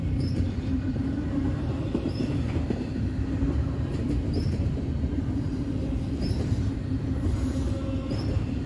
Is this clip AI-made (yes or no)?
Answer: yes